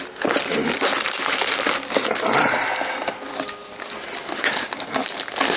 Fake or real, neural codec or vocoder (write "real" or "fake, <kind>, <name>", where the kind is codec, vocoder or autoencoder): real